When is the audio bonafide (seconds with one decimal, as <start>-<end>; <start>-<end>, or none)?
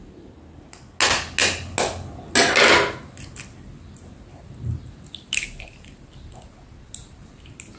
0.0-7.8